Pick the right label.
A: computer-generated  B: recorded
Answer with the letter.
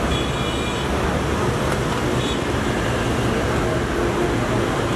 B